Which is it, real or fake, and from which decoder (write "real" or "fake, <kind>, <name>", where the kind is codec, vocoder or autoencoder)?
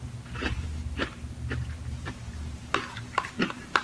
fake, vocoder, BigVGAN v2